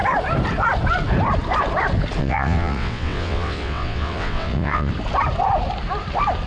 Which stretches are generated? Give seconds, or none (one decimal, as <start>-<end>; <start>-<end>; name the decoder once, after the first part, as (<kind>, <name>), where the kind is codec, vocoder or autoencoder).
2.2-4.9 (vocoder, WaveNeXt)